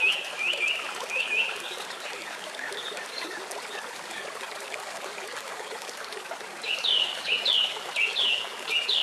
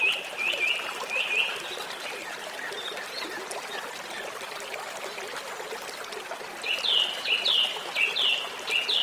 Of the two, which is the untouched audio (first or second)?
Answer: second